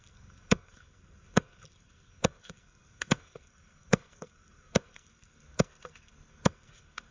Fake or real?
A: fake